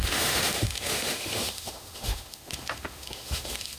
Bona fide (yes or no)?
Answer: no